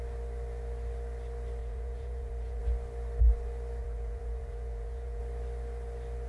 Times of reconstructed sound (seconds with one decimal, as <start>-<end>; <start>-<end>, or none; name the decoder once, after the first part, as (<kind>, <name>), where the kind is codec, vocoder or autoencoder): 1.6-2.6 (vocoder, Vocos); 3.8-5.2